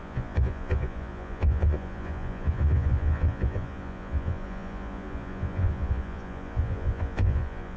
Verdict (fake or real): fake